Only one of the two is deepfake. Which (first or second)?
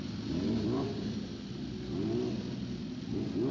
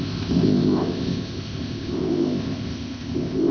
second